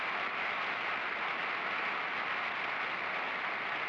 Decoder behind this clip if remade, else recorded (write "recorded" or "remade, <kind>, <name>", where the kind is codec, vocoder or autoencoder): recorded